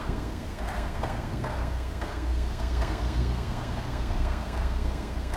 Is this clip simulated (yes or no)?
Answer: yes